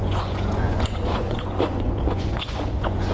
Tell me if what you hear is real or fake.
fake